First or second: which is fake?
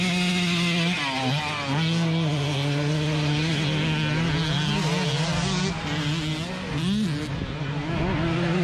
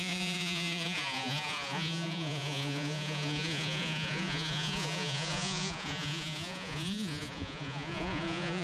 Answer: second